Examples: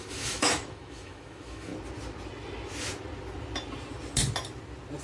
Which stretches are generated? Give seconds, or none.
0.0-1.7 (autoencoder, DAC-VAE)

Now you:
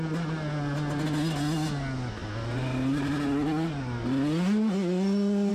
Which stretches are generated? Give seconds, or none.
none

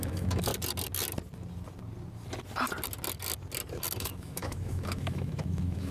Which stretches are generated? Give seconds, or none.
0.0-0.5 (autoencoder, DAC-VAE); 4.0-5.9